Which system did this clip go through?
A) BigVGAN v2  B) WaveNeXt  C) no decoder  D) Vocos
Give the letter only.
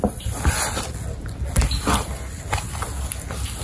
C